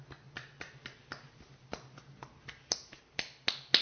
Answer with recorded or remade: recorded